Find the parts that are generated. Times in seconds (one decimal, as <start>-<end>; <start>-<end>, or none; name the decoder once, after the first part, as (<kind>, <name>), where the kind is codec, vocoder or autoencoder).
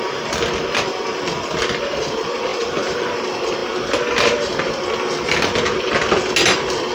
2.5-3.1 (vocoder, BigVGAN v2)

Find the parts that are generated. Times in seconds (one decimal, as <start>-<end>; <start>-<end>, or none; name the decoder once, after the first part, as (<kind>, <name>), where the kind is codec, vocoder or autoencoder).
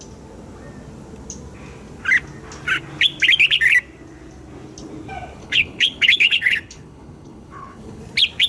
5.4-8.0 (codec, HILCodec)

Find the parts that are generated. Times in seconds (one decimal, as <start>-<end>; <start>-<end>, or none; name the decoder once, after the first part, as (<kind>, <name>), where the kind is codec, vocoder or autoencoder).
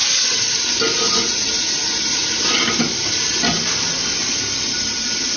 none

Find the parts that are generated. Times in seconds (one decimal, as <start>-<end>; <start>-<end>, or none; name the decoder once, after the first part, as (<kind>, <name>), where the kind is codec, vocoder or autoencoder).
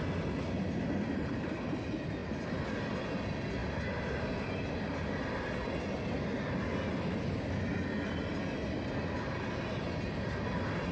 none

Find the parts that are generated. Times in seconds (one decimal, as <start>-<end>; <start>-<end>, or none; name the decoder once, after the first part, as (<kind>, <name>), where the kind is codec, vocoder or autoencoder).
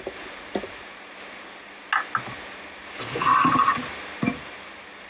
none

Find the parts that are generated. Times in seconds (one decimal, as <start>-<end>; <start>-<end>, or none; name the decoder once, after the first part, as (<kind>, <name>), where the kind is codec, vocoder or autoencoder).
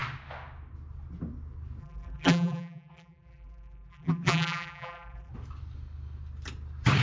1.8-5.3 (vocoder, BigVGAN v2)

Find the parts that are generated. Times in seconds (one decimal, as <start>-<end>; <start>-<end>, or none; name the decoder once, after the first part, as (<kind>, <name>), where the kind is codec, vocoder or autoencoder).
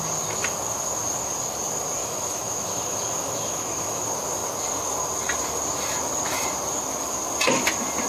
2.0-4.0 (autoencoder, DAC-VAE)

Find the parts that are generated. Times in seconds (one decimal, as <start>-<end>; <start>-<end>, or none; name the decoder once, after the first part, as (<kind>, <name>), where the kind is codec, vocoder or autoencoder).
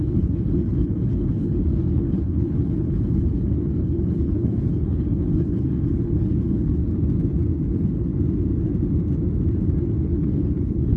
0.0-6.8 (codec, HILCodec); 7.7-8.1; 10.0-11.0